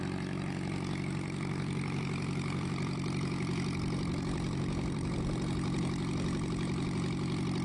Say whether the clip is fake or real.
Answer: real